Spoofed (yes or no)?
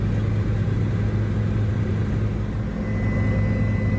no